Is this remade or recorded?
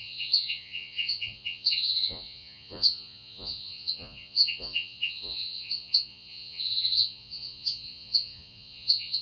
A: remade